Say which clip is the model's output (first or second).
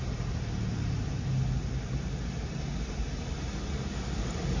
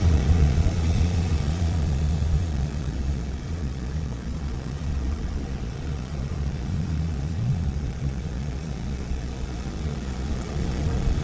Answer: second